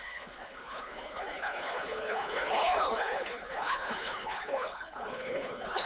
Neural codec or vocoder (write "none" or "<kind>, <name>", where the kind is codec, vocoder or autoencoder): codec, HILCodec